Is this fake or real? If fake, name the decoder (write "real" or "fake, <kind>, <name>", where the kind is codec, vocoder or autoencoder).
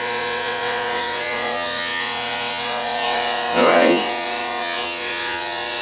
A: fake, vocoder, WaveNeXt